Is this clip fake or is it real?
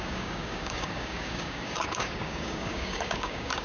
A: fake